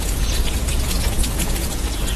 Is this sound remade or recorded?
remade